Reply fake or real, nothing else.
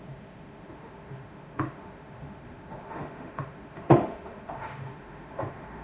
fake